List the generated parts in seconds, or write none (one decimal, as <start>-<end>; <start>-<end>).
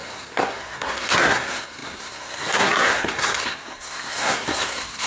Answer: 0.0-5.1